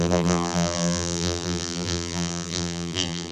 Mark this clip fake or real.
fake